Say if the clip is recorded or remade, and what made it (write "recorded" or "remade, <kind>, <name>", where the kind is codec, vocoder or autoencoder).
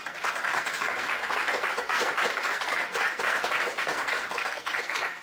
remade, codec, SNAC